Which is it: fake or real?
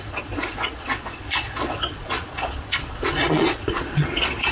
fake